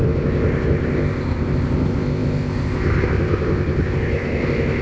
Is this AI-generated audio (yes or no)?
yes